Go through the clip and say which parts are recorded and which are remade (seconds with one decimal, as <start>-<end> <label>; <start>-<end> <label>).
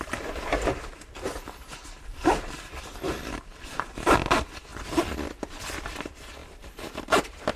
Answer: 0.0-2.1 recorded; 2.1-3.9 remade; 3.9-6.4 recorded; 6.4-6.9 remade; 6.9-7.6 recorded